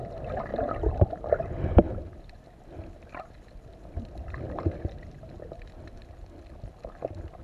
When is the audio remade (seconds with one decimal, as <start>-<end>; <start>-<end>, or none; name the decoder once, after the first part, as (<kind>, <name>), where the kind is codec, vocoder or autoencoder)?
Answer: none